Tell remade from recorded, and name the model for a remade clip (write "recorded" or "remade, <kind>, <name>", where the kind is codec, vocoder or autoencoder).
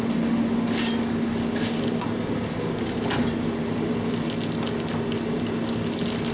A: recorded